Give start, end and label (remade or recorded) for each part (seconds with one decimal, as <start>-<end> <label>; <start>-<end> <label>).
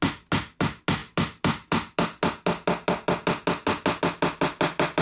0.0-5.0 recorded